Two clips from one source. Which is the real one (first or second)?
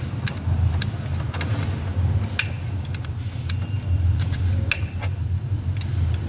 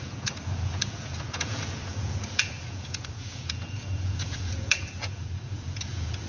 first